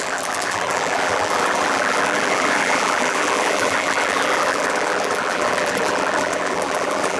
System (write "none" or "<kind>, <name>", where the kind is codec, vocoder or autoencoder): vocoder, BigVGAN v2